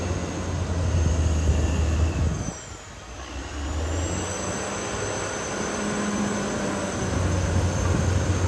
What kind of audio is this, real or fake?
real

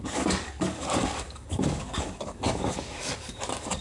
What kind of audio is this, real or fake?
fake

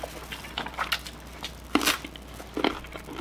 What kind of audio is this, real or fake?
real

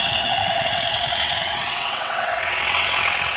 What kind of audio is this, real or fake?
fake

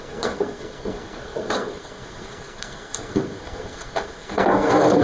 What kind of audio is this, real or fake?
fake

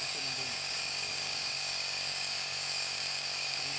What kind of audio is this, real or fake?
fake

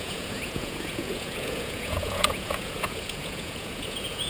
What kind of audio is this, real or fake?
fake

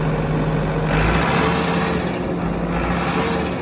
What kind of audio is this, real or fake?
real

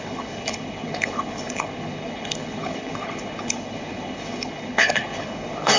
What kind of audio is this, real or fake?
fake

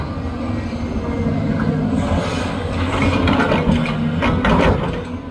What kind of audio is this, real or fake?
real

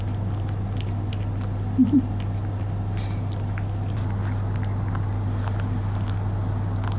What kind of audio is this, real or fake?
real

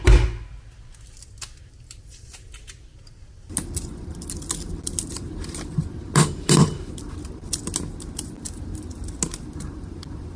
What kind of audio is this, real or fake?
real